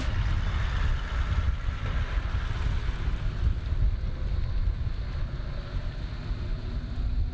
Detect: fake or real real